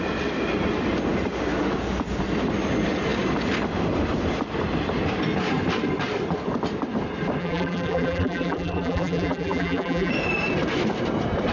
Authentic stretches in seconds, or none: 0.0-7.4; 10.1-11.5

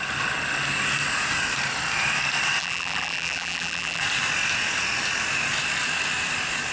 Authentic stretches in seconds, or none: 0.0-2.6; 4.0-6.7

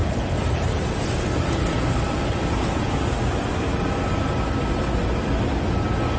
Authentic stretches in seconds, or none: 3.7-6.2

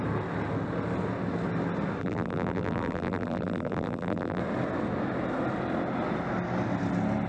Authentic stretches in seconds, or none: 0.0-2.0; 4.4-7.3

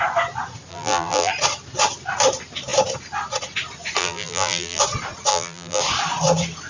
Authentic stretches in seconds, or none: 0.0-0.7; 1.3-4.0; 4.8-5.3; 5.8-6.7

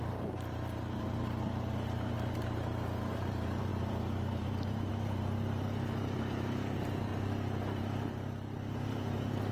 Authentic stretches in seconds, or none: 7.1-7.8